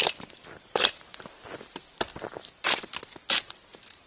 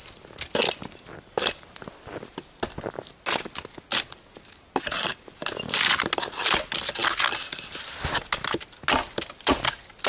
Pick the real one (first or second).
second